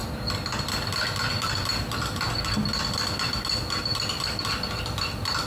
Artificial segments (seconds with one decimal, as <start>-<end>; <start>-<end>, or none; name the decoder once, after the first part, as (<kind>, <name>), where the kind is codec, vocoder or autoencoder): none